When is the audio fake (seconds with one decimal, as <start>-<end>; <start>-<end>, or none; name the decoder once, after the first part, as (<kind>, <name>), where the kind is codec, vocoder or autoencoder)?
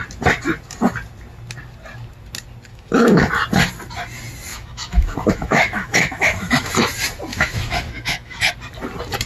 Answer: 2.7-3.3 (autoencoder, DAC-VAE); 4.5-6.7; 7.3-8.5